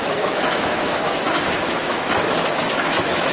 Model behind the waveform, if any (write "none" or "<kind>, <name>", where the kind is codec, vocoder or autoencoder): autoencoder, DAC-VAE